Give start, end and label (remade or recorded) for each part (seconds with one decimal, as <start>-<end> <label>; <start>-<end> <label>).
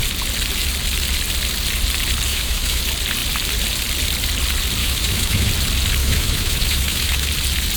0.0-2.3 recorded; 2.3-2.8 remade; 2.8-4.8 recorded; 4.8-5.5 remade; 5.5-6.0 recorded; 6.0-7.3 remade; 7.3-7.8 recorded